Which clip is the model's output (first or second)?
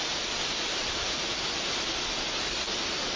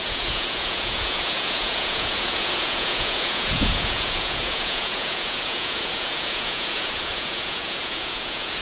second